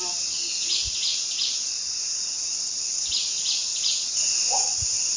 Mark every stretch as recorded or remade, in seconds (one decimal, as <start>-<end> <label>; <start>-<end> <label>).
0.0-3.6 recorded; 3.6-4.2 remade; 4.2-5.2 recorded